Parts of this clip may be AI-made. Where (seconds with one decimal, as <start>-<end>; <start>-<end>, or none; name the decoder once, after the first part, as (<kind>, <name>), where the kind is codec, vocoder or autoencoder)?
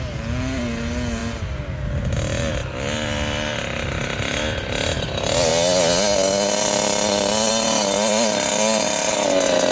none